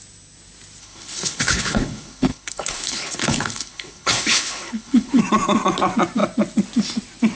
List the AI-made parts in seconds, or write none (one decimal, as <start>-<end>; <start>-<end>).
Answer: 0.8-5.2